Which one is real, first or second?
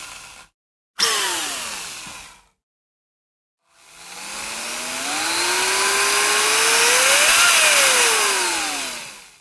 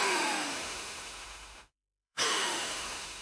first